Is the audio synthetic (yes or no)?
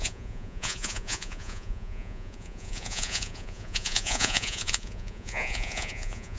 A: yes